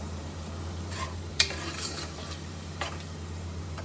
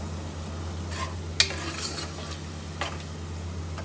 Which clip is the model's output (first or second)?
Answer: first